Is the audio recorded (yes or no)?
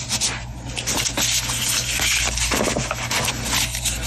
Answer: yes